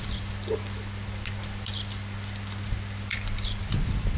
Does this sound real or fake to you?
real